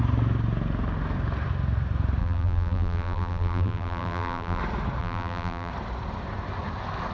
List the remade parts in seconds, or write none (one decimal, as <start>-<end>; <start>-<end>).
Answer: 2.2-4.6; 5.0-5.7